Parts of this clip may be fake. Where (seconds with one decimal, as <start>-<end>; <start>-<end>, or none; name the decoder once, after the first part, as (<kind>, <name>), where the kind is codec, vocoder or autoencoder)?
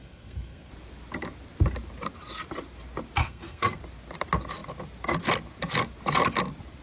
0.0-0.7 (codec, SNAC); 3.2-3.8